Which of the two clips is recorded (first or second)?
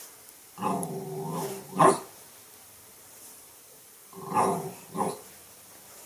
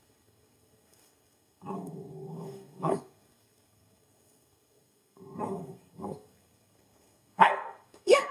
first